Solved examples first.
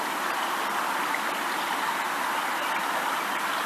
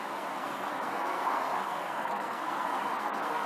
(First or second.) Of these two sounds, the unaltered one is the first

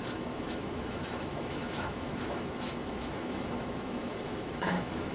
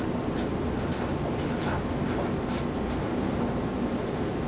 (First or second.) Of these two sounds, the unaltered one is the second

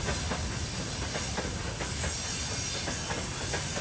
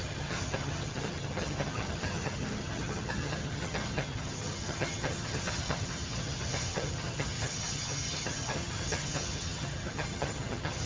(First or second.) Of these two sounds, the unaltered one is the first